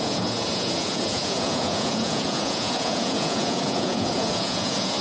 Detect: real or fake fake